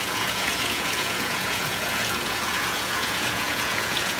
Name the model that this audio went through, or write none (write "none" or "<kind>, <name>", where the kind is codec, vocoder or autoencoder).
vocoder, Vocos